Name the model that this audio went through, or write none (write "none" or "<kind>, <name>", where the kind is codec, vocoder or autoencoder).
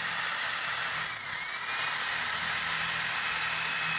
none